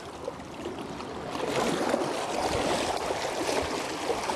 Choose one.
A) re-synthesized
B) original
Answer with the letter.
B